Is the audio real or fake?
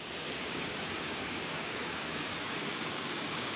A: fake